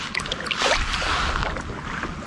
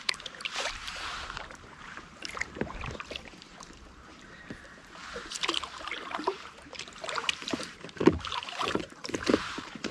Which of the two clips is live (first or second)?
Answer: first